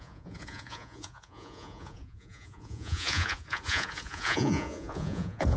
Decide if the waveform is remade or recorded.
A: remade